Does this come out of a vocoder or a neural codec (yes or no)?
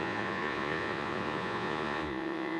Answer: yes